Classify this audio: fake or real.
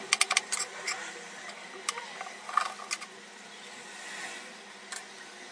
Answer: real